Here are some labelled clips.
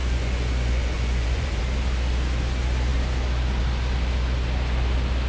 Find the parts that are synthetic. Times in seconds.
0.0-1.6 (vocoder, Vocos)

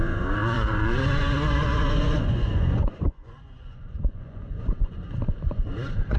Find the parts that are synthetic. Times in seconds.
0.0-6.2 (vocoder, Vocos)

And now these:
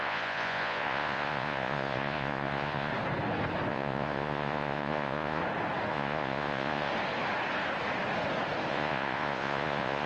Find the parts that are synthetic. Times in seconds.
0.0-2.9 (vocoder, Vocos); 3.7-5.4; 5.9-6.9; 8.7-10.1

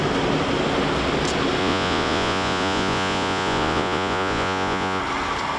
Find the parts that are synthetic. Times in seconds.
1.6-5.0 (vocoder, Vocos)

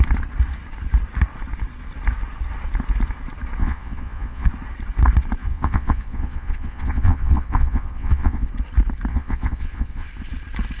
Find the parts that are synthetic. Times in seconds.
3.6-4.5 (vocoder, Vocos); 5.4-8.5; 9.1-10.1

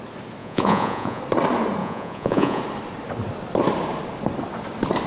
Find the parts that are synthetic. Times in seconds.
0.4-1.2 (vocoder, Vocos); 1.8-2.6

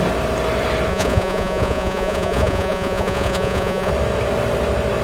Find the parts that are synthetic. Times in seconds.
0.9-3.9 (vocoder, Vocos)